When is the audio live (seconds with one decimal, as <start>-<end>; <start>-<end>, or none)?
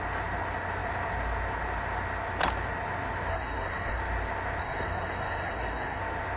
0.0-3.3; 4.0-4.6; 6.0-6.4